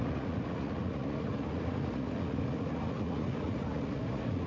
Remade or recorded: remade